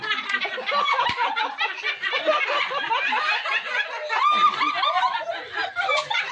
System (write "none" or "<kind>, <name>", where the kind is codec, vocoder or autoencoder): none